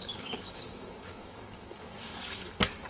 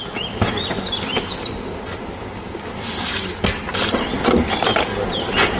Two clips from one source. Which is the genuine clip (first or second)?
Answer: second